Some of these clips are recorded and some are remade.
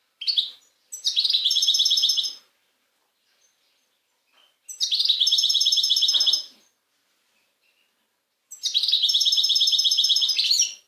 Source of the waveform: recorded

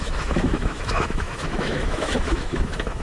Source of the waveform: remade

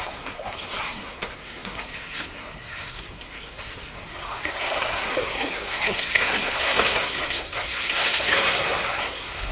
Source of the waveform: remade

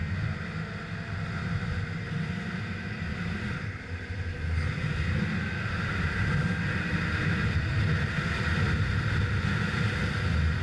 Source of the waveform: recorded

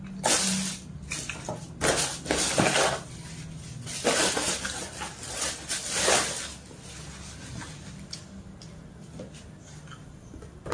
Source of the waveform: recorded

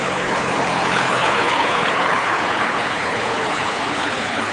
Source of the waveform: remade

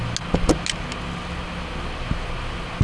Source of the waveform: recorded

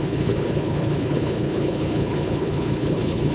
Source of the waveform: remade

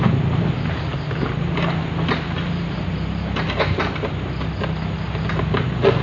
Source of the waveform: recorded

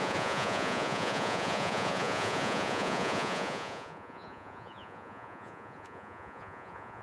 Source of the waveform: remade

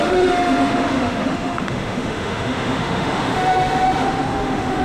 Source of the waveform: remade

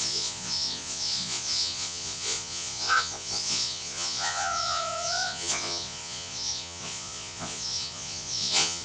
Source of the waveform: remade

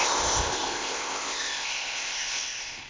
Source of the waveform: remade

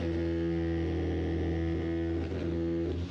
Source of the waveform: recorded